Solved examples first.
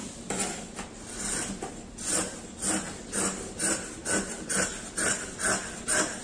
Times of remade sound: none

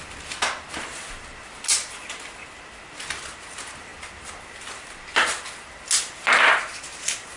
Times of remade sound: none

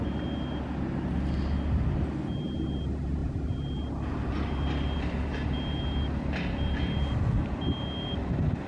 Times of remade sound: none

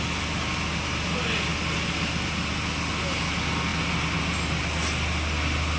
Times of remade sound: none